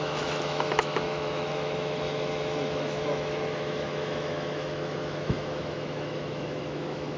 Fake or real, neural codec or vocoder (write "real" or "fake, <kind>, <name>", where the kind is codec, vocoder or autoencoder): fake, autoencoder, DAC-VAE